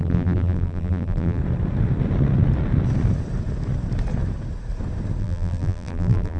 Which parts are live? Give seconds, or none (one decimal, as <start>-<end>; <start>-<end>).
1.4-5.2